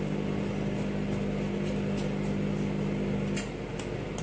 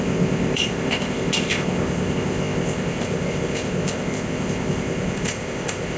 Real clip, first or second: first